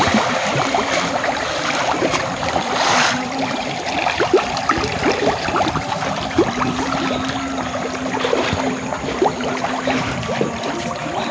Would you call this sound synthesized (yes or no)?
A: yes